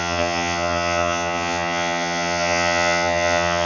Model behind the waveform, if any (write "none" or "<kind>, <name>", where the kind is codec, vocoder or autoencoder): vocoder, HiFi-GAN